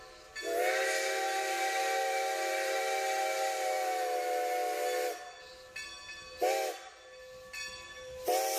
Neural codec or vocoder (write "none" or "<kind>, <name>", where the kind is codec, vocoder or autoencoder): none